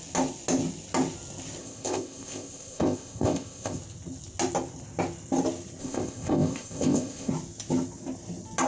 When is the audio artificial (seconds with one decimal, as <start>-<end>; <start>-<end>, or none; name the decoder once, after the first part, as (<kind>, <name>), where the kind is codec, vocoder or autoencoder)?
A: 1.6-3.8 (codec, ZipCodec); 5.8-7.3